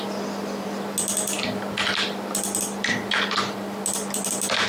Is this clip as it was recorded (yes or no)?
yes